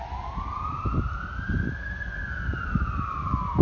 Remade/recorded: recorded